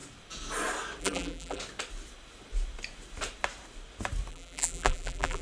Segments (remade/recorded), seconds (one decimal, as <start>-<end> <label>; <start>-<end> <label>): 0.0-1.0 recorded; 1.0-1.6 remade; 1.6-4.3 recorded; 4.3-5.4 remade